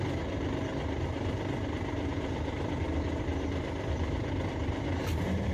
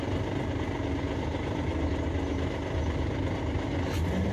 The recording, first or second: second